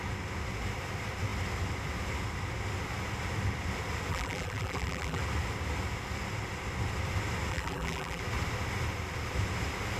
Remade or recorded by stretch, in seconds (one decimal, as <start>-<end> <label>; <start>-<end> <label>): 0.0-4.1 recorded; 4.1-5.2 remade; 5.2-7.5 recorded; 7.5-8.2 remade; 8.2-10.0 recorded